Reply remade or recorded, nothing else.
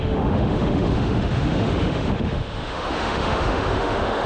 remade